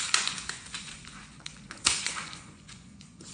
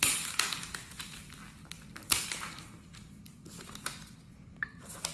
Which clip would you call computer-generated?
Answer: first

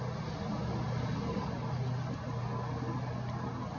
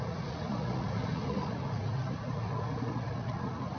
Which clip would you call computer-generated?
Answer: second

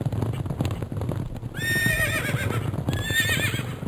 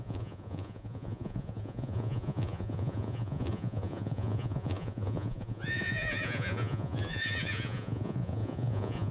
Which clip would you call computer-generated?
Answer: second